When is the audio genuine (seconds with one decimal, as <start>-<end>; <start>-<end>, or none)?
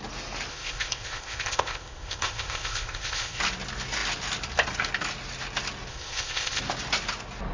0.0-0.5; 3.4-5.9; 6.6-7.5